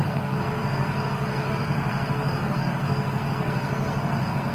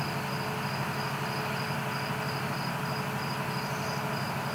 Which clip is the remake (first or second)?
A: first